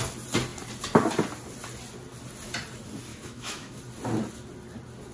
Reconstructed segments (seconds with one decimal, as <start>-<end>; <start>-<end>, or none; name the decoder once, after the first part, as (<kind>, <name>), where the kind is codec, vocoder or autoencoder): 3.1-3.8 (autoencoder, DAC-VAE)